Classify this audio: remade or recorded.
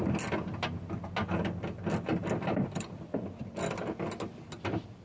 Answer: recorded